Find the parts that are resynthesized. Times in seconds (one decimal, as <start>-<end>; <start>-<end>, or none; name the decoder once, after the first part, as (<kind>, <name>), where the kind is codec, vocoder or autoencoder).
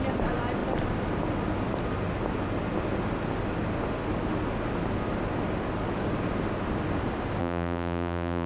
7.4-8.5 (vocoder, BigVGAN v2)